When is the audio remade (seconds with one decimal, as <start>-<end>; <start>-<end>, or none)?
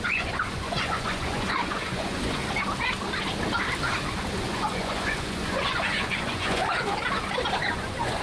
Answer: 0.0-2.4; 4.5-6.6; 7.6-8.2